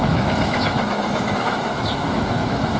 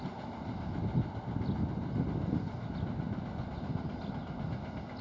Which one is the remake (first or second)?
first